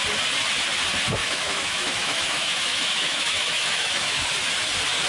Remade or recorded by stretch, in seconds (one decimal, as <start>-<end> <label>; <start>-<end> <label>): 0.0-1.2 recorded; 1.2-4.3 remade; 4.3-5.1 recorded